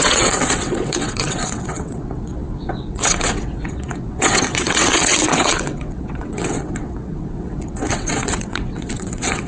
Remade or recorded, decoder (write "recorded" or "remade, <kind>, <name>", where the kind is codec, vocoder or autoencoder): remade, vocoder, WaveNeXt